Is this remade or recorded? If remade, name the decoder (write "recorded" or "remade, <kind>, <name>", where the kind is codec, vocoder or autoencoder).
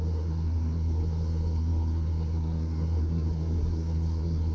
remade, codec, SNAC